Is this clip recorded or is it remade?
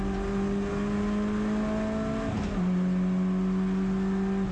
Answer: recorded